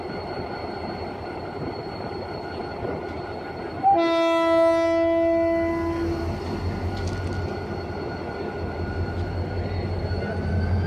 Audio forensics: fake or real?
real